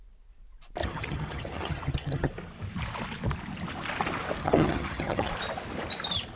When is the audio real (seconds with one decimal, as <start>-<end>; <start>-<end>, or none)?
0.0-0.8; 2.3-4.4; 5.3-6.4